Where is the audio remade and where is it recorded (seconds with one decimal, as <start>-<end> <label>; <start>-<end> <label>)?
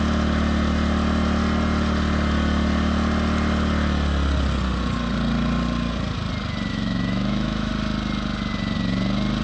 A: 0.0-6.7 recorded; 6.7-7.7 remade; 7.7-9.4 recorded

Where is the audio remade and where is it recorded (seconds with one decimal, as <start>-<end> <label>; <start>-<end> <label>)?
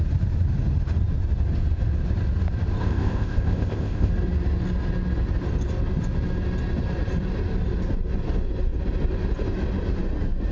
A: 0.0-2.8 recorded; 2.8-4.1 remade; 4.1-10.5 recorded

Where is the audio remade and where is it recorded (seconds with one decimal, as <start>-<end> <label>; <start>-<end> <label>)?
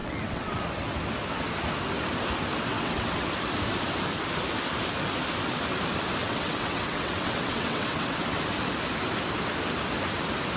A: 0.0-0.6 remade; 0.6-2.7 recorded; 2.7-3.3 remade; 3.3-6.2 recorded; 6.2-8.4 remade; 8.4-10.6 recorded